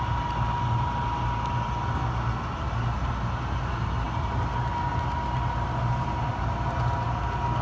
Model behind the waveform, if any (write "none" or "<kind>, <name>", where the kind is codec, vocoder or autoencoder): none